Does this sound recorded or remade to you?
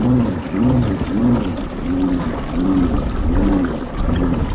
recorded